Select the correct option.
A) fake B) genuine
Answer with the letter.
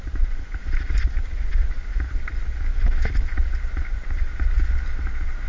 B